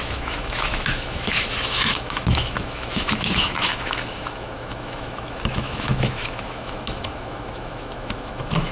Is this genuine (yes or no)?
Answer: no